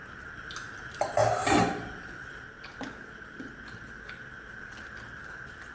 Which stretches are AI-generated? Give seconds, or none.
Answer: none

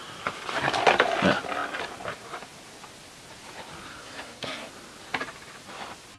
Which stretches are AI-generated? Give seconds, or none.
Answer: 3.9-4.7